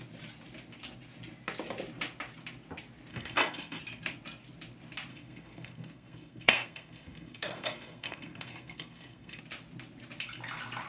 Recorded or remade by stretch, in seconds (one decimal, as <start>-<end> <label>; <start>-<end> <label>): 0.0-3.1 recorded; 3.1-3.8 remade; 3.8-5.1 recorded; 5.1-9.4 remade; 9.4-10.9 recorded